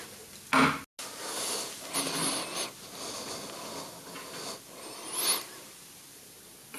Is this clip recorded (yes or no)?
yes